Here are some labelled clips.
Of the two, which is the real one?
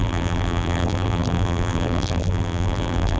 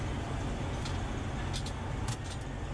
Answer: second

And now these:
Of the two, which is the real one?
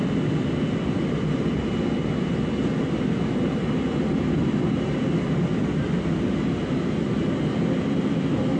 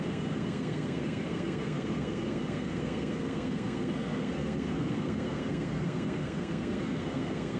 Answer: first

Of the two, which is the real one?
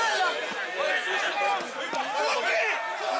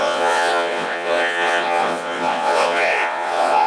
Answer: first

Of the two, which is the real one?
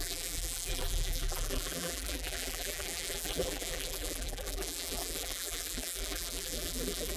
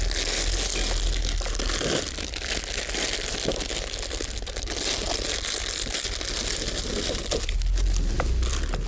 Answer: second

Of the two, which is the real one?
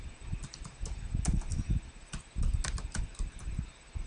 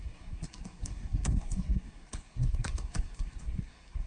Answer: first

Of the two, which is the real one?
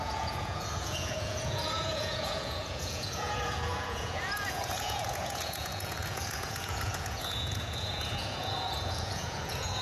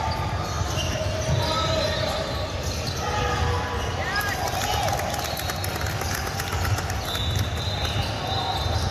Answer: second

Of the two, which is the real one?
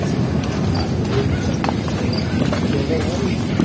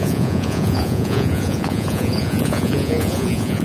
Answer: first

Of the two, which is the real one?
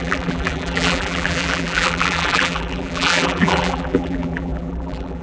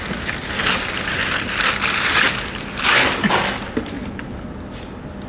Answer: second